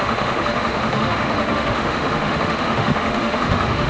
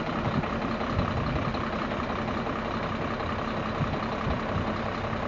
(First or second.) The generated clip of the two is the first